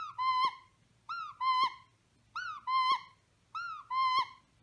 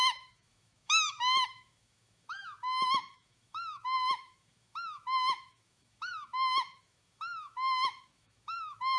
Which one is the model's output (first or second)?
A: second